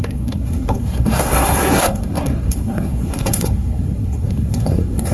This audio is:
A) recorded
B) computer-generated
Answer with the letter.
B